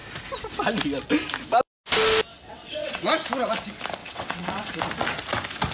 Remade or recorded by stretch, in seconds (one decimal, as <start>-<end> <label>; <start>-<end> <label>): 0.0-2.3 recorded; 2.3-3.1 remade; 3.1-4.0 recorded; 4.0-4.8 remade; 4.8-5.7 recorded